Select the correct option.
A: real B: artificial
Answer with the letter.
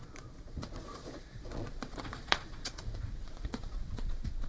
B